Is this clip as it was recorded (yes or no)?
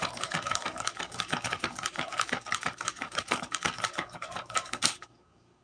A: no